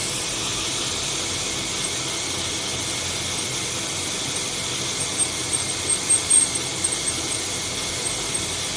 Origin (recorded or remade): recorded